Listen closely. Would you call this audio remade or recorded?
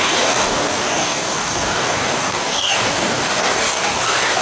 remade